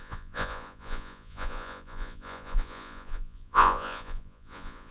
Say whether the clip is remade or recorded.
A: remade